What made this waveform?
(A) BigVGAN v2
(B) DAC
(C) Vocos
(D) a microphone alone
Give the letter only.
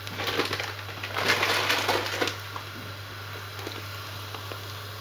D